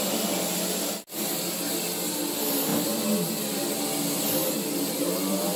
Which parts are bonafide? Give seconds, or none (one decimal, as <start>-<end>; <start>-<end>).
0.0-5.6